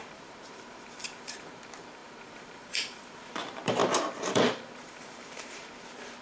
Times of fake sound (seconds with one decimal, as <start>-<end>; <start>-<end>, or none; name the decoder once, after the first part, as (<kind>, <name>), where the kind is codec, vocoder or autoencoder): 0.0-6.2 (vocoder, BigVGAN v2)